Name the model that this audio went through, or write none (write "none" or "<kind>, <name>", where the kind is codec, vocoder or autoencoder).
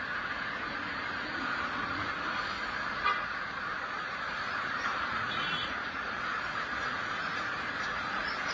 vocoder, Vocos